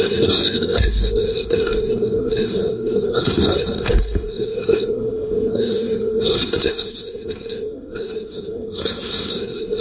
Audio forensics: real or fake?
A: fake